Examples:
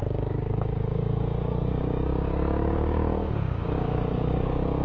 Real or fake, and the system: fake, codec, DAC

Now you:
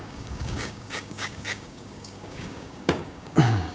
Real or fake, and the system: fake, codec, DAC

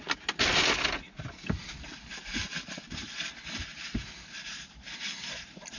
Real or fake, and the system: real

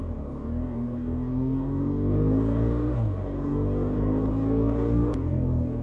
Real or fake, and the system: fake, codec, DAC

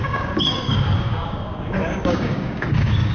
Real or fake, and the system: fake, codec, DAC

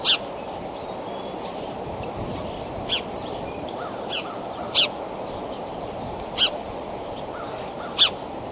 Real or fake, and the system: real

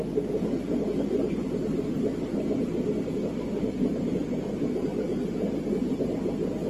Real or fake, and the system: real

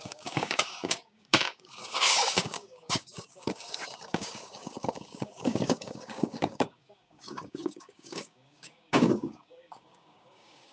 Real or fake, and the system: fake, codec, DAC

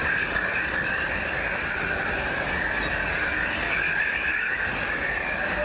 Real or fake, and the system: real